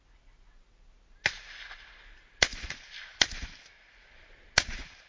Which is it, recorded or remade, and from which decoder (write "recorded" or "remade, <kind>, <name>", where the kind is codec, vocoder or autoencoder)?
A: recorded